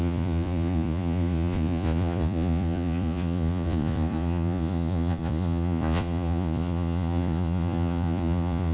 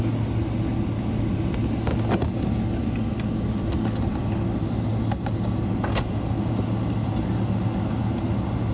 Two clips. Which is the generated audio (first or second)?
first